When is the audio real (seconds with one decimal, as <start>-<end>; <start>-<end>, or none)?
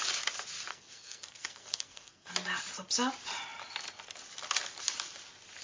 0.0-0.7; 2.3-5.6